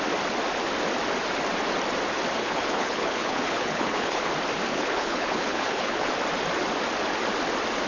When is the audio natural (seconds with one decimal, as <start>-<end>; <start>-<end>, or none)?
0.0-2.4; 4.3-4.7; 6.1-7.9